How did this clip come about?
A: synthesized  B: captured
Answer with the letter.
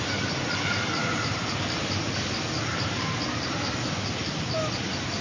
B